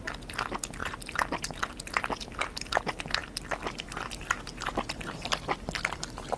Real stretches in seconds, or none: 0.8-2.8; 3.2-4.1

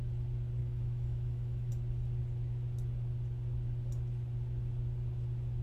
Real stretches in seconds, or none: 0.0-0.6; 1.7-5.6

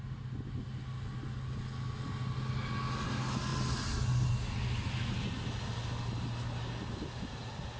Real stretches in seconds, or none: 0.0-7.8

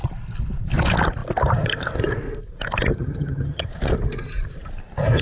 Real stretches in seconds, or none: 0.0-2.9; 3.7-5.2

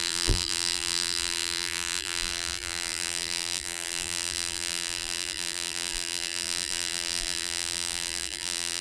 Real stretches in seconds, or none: none

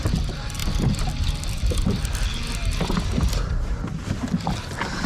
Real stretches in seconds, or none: 0.0-5.1

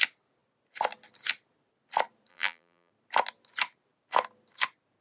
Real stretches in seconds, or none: 0.0-2.3; 2.9-5.0